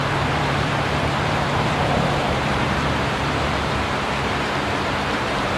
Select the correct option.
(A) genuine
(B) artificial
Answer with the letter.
B